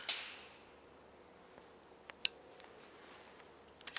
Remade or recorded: recorded